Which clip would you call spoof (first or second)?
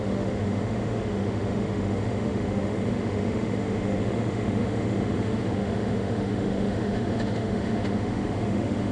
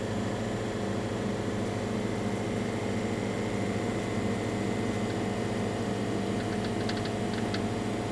first